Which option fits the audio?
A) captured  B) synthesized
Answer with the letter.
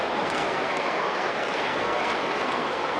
B